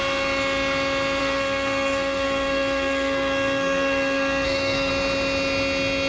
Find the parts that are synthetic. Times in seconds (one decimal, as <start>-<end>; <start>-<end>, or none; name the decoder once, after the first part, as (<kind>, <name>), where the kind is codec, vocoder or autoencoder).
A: 1.2-4.9 (codec, SNAC)